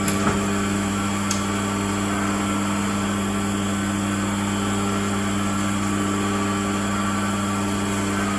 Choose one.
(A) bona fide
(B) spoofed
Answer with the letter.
A